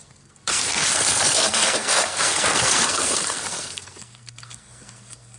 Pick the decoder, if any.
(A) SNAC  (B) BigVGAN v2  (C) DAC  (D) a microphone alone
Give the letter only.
A